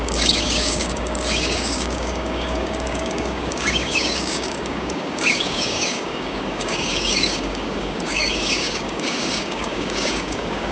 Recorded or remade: remade